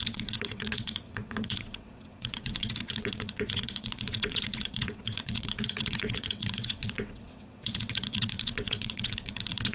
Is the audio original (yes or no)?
no